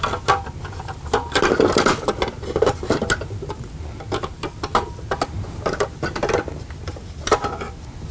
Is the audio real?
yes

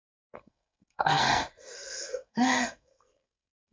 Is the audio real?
no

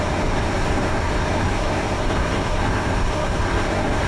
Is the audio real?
no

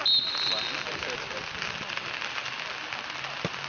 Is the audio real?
yes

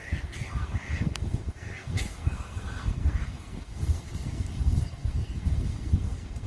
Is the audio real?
no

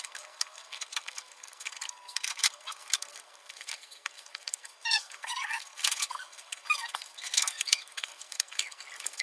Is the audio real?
no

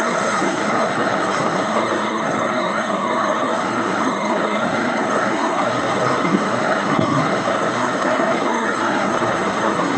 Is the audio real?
no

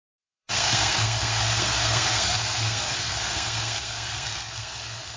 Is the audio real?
no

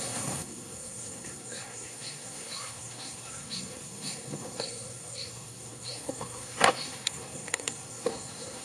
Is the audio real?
no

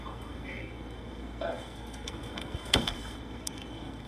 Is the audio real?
no